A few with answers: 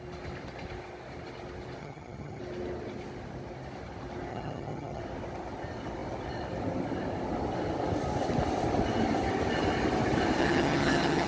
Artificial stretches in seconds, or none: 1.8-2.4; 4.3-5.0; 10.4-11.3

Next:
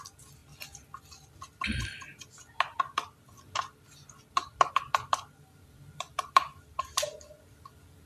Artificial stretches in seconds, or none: 0.0-0.4; 4.7-8.1

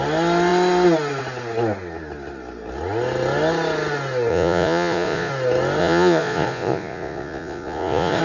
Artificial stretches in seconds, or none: 4.3-5.3; 5.8-8.2

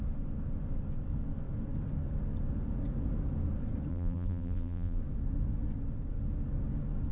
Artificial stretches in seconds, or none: 3.9-5.0

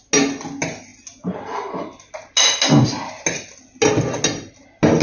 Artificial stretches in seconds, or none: none

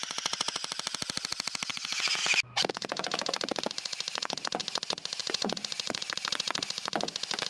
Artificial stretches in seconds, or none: 0.0-0.6; 1.7-2.2; 2.7-7.5